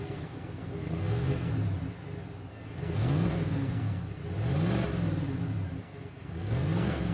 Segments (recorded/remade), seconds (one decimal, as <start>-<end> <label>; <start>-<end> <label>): 0.0-1.5 remade; 1.5-2.5 recorded; 2.5-4.2 remade; 4.2-5.8 recorded; 5.8-7.1 remade